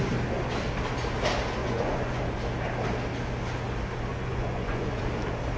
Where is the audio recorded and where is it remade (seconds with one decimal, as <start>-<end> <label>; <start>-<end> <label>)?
0.0-1.6 recorded; 1.6-2.2 remade; 2.2-4.1 recorded; 4.1-5.0 remade; 5.0-5.6 recorded